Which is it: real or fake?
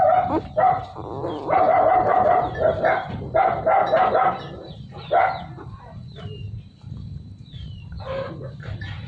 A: fake